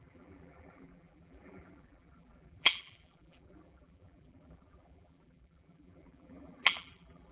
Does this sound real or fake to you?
fake